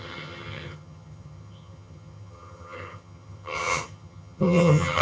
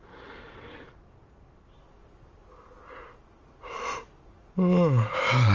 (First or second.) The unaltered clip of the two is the second